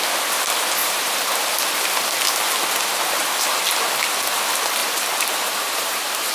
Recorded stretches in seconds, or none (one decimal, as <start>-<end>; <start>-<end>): 0.0-0.8; 1.3-4.8